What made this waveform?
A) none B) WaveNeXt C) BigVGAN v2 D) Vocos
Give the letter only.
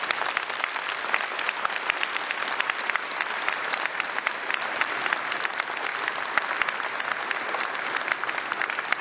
C